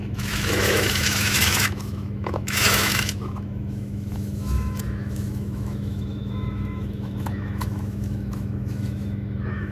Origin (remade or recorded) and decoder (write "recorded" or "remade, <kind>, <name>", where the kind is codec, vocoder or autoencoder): remade, autoencoder, DAC-VAE